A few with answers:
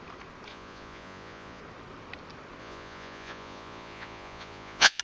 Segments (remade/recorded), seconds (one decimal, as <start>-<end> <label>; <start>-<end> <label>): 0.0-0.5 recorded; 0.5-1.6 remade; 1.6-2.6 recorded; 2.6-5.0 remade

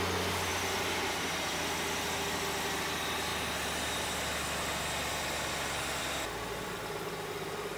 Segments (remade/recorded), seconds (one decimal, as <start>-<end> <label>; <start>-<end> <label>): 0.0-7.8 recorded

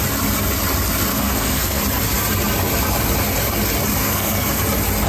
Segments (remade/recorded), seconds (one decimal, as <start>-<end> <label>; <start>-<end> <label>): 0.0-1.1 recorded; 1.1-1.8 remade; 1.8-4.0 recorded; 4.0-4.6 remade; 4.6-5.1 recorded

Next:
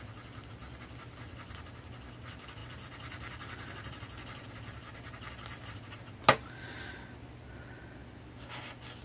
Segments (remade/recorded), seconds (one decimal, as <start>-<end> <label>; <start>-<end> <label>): 0.0-9.0 recorded

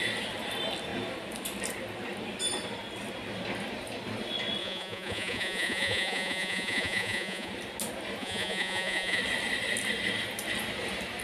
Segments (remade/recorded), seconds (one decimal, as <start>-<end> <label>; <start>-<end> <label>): 0.0-4.6 recorded; 4.6-7.5 remade; 7.5-8.2 recorded; 8.2-9.2 remade; 9.2-11.2 recorded

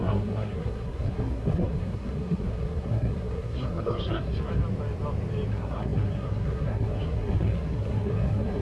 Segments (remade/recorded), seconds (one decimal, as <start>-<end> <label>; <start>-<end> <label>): 0.0-4.5 remade; 4.5-5.5 recorded; 5.5-8.6 remade

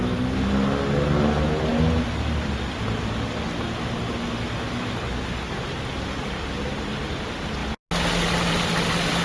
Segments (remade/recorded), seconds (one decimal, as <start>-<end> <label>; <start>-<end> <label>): 0.0-9.2 recorded

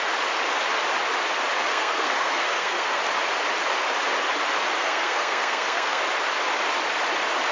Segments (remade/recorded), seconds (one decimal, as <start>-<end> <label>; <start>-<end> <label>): 0.0-1.7 recorded; 1.7-3.0 remade; 3.0-4.8 recorded; 4.8-6.0 remade; 6.0-7.5 recorded